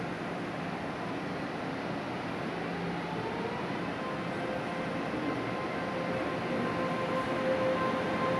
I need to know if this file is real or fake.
real